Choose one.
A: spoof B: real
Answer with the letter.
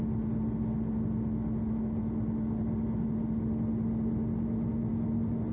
B